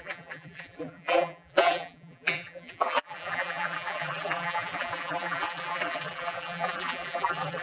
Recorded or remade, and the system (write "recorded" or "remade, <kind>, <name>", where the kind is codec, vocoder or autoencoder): remade, vocoder, BigVGAN v2